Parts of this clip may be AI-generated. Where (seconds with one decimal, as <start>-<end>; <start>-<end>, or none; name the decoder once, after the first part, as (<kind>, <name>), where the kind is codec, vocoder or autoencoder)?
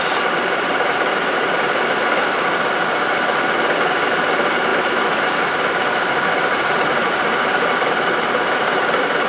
0.0-9.3 (vocoder, BigVGAN v2)